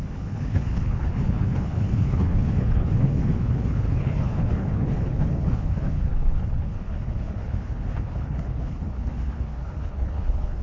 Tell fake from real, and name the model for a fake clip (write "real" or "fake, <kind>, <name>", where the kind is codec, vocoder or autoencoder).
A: fake, codec, HILCodec